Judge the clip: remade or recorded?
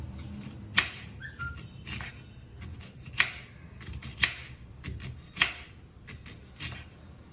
remade